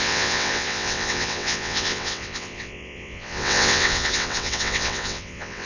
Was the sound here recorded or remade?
remade